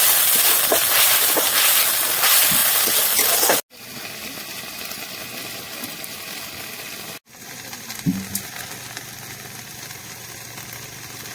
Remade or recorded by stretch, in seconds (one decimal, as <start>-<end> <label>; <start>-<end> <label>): 0.0-11.3 recorded